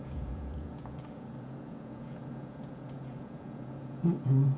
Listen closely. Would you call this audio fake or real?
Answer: fake